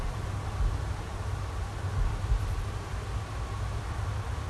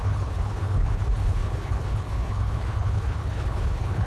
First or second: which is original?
first